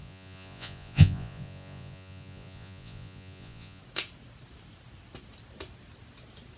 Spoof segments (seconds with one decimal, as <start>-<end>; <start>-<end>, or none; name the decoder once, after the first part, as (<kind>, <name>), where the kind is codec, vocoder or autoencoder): 0.0-3.8 (vocoder, Vocos)